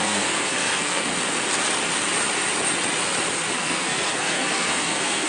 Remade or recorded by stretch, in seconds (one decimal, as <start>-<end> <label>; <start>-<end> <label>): 0.0-1.1 remade; 1.1-3.5 recorded; 3.5-5.3 remade